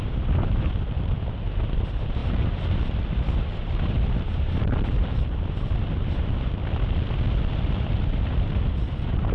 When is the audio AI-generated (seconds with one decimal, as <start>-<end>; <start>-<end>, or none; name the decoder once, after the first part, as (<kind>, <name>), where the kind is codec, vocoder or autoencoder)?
0.0-6.6 (vocoder, BigVGAN v2); 7.6-9.3